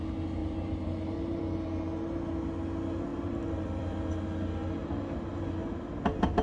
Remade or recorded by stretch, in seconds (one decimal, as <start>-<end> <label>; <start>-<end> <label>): 0.0-0.4 recorded; 0.4-1.4 remade; 1.4-3.1 recorded; 3.1-4.1 remade; 4.1-4.8 recorded; 4.8-5.4 remade; 5.4-6.4 recorded